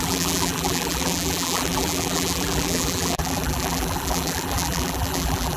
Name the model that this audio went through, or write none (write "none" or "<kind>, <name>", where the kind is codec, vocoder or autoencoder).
vocoder, BigVGAN v2